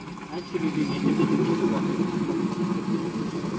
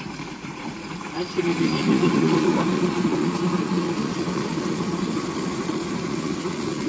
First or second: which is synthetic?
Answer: second